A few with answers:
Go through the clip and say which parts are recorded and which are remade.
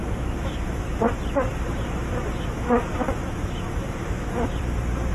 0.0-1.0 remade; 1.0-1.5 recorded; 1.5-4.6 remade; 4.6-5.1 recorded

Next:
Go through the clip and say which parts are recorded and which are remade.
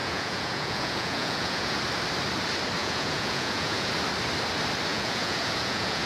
0.0-1.8 remade; 1.8-2.8 recorded; 2.8-3.9 remade; 3.9-4.9 recorded; 4.9-6.1 remade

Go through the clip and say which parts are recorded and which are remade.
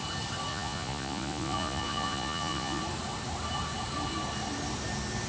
0.0-0.5 recorded; 0.5-2.8 remade; 2.8-5.3 recorded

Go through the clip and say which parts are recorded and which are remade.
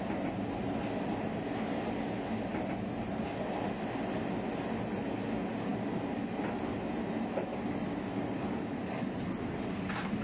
0.0-10.2 recorded